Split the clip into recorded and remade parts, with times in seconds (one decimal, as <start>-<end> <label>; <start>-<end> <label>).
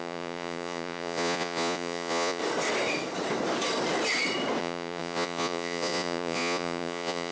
0.0-2.4 remade; 2.4-4.6 recorded; 4.6-7.3 remade